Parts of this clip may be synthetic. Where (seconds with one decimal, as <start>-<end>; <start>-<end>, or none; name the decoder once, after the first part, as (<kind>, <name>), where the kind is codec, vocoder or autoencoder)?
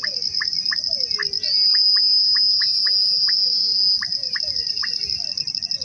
4.2-4.9 (vocoder, BigVGAN v2)